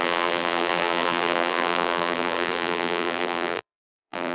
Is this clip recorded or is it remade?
remade